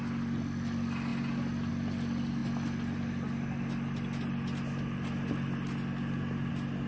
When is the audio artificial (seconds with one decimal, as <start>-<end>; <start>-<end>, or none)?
none